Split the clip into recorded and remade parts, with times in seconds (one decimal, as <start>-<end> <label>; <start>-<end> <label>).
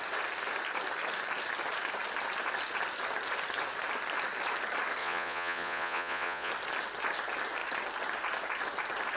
0.0-5.0 recorded; 5.0-6.5 remade; 6.5-9.2 recorded